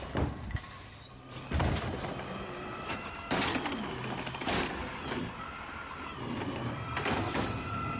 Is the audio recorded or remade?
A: remade